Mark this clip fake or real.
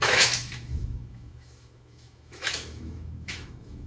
fake